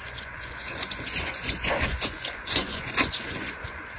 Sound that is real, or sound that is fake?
fake